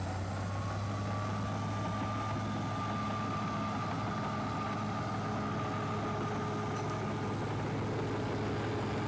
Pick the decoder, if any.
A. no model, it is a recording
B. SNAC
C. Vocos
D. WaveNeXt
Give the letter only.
A